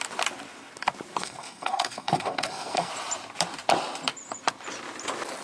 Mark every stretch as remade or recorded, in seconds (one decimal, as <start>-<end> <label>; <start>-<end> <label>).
0.0-1.2 recorded; 1.2-2.9 remade; 2.9-5.4 recorded

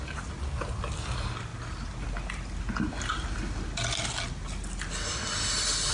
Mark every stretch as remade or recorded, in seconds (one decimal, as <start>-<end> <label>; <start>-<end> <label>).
0.0-5.9 recorded

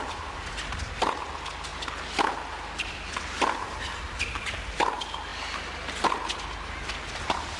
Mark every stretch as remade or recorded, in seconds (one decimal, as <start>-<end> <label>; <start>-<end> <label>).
0.0-7.6 recorded

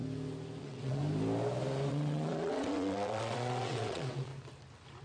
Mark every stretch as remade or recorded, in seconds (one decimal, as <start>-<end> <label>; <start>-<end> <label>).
0.0-0.6 recorded; 0.6-1.0 remade; 1.0-1.9 recorded; 1.9-4.3 remade; 4.3-5.0 recorded

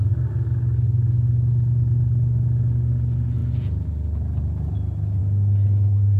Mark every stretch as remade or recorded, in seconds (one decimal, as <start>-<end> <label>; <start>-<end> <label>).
0.0-6.2 recorded